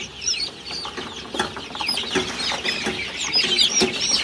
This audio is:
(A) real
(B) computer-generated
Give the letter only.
A